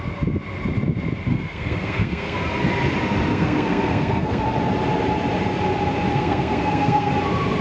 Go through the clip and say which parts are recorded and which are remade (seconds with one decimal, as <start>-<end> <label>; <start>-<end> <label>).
0.0-1.3 recorded; 1.3-2.4 remade; 2.4-3.3 recorded; 3.3-4.4 remade; 4.4-6.1 recorded; 6.1-7.1 remade; 7.1-7.6 recorded